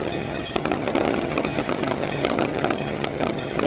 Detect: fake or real fake